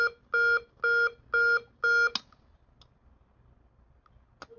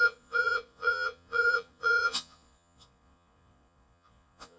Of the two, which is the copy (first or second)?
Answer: second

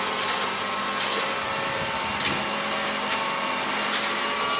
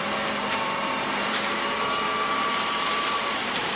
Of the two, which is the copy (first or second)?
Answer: second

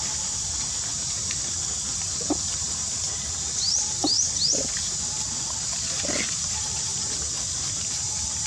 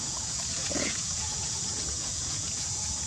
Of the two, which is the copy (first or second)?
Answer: second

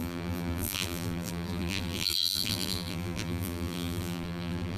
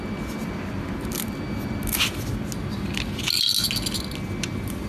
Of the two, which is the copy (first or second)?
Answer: first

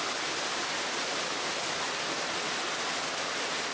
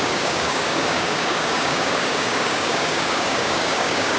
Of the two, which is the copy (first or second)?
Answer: second